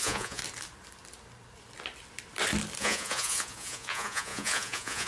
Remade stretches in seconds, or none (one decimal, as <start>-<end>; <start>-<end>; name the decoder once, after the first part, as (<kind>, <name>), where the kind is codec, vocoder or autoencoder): 0.0-0.4 (vocoder, Vocos); 2.8-5.1